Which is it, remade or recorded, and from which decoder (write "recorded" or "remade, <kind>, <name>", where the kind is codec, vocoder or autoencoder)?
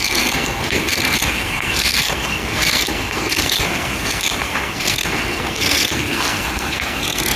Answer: remade, codec, SNAC